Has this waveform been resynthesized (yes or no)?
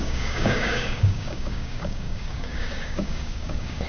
yes